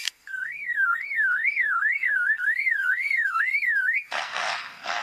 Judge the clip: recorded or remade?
remade